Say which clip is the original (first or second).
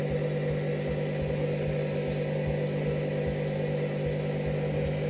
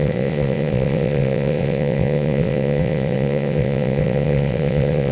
first